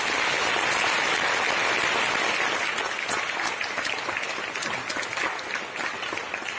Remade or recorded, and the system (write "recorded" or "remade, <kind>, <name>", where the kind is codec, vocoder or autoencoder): recorded